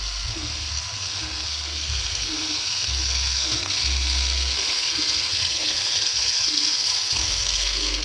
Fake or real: fake